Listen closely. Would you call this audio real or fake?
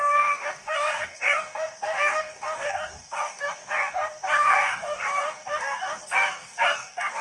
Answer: fake